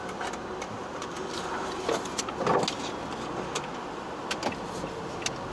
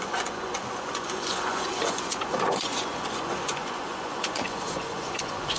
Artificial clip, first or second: second